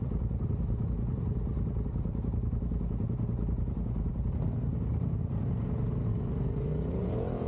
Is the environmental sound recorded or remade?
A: remade